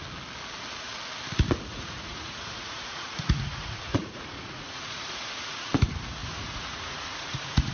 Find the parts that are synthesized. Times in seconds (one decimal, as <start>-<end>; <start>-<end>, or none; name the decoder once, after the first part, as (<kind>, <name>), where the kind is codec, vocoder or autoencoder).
1.7-5.7 (vocoder, Vocos); 6.2-7.7